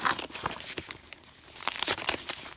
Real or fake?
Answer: fake